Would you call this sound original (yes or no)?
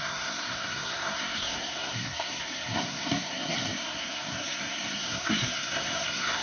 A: no